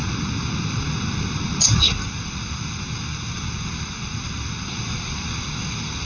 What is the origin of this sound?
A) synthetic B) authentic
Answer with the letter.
B